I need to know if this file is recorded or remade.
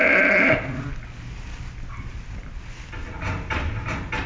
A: recorded